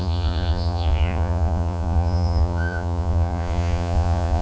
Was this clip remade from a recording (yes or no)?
yes